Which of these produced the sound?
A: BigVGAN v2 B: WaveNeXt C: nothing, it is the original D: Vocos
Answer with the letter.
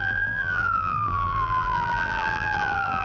A